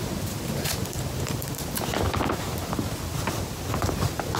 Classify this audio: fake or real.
fake